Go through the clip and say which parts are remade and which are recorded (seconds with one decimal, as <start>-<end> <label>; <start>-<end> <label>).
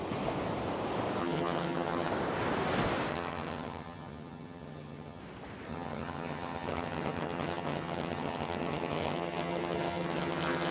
0.0-1.2 recorded; 1.2-2.1 remade; 2.1-3.1 recorded; 3.1-5.2 remade; 5.2-5.7 recorded; 5.7-10.7 remade